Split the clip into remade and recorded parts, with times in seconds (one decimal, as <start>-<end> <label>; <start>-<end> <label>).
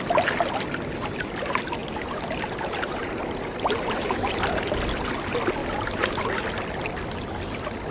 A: 0.0-1.8 recorded; 1.8-4.6 remade; 4.6-5.6 recorded; 5.6-6.2 remade; 6.2-7.9 recorded